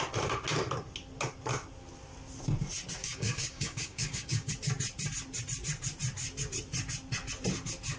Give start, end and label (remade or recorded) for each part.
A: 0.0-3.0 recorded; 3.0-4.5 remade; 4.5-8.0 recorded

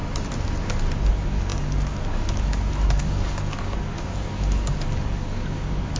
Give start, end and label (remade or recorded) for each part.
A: 0.0-1.1 recorded; 1.1-6.0 remade

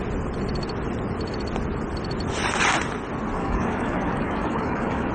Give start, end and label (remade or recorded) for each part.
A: 0.0-3.4 recorded; 3.4-5.1 remade

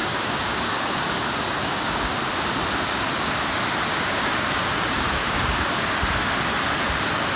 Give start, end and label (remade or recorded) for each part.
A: 0.0-1.1 remade; 1.1-1.6 recorded; 1.6-2.3 remade; 2.3-3.9 recorded; 3.9-5.6 remade; 5.6-7.4 recorded

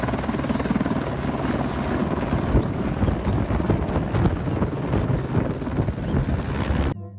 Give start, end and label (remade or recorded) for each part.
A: 0.0-7.2 recorded

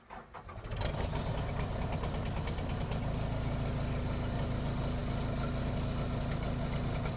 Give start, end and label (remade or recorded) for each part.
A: 0.0-7.2 recorded